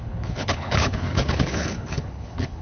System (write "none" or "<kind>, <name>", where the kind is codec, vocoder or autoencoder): codec, HILCodec